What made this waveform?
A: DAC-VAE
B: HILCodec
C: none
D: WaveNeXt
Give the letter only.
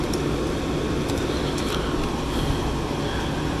C